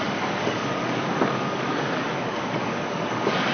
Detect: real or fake fake